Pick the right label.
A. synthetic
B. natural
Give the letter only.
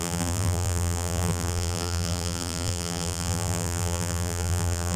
A